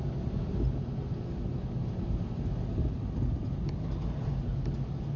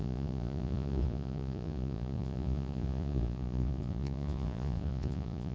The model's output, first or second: second